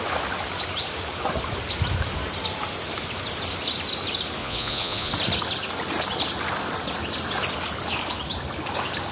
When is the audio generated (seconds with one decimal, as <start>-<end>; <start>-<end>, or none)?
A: 4.4-5.1